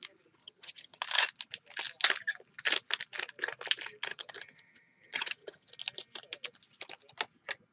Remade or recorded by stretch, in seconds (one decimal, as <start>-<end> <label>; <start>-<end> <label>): 0.0-0.4 recorded; 0.4-1.0 remade; 1.0-4.1 recorded; 4.1-5.7 remade; 5.7-7.7 recorded